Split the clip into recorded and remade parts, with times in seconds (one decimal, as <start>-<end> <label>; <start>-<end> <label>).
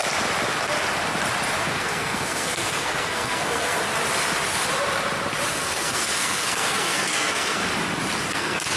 0.0-1.6 recorded; 1.6-3.8 remade; 3.8-5.5 recorded; 5.5-7.6 remade; 7.6-8.3 recorded; 8.3-8.8 remade